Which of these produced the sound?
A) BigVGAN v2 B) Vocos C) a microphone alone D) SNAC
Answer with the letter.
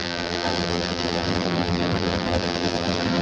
A